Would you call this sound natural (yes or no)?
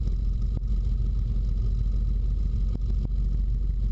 yes